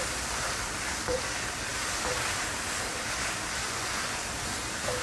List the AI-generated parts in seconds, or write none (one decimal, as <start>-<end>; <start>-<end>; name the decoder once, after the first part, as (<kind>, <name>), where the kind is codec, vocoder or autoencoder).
3.6-4.2 (vocoder, Vocos)

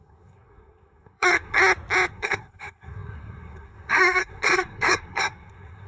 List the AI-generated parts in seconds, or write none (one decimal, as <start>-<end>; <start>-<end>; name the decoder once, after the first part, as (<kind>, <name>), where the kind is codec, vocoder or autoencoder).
0.0-1.6 (codec, SNAC); 2.1-5.9

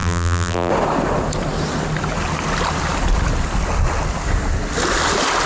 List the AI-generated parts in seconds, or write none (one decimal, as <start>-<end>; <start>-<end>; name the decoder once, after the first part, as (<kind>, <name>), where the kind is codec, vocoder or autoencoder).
0.0-0.7 (vocoder, BigVGAN v2)

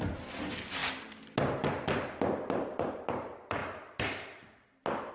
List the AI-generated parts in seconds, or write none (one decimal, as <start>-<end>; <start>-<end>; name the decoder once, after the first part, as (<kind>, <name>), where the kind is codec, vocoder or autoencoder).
none

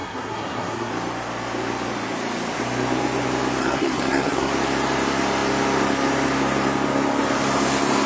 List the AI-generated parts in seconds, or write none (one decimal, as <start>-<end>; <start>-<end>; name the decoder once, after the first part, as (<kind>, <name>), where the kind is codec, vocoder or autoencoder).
0.0-0.9 (codec, SNAC); 3.6-4.5

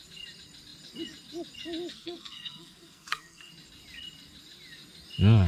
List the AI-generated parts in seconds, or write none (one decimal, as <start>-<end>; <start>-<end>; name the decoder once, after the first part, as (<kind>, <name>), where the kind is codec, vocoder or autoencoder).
1.9-3.5 (codec, SNAC)